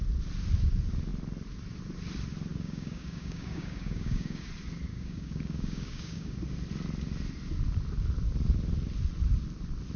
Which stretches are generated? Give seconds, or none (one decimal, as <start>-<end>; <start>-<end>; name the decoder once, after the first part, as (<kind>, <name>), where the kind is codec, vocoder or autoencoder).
2.5-4.5 (codec, DAC); 4.9-6.4